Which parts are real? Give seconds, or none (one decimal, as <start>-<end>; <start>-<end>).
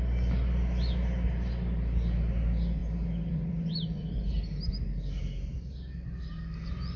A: 0.0-2.8; 4.7-7.0